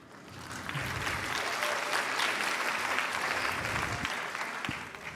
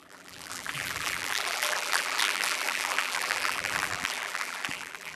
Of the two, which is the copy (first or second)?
second